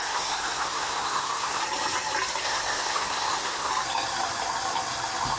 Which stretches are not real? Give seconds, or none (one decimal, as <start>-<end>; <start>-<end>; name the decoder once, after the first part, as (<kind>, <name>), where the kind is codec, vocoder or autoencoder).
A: 0.0-1.6 (codec, SNAC); 2.4-3.7